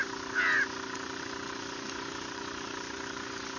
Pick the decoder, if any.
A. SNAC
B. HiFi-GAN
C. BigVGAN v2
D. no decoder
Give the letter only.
D